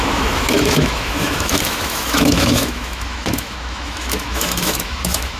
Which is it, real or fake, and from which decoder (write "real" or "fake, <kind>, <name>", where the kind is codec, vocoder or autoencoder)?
fake, autoencoder, DAC-VAE